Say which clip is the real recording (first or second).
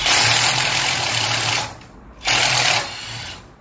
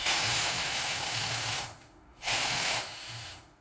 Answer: first